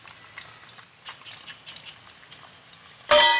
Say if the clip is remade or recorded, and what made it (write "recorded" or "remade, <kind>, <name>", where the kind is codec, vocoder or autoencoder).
recorded